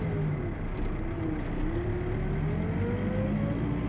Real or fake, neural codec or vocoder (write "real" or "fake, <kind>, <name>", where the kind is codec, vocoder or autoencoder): real